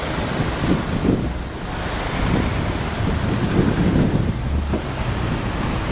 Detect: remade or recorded recorded